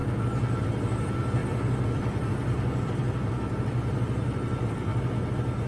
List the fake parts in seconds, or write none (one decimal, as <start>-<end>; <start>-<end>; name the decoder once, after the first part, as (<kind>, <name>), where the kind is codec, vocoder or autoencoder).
0.6-4.9 (vocoder, BigVGAN v2)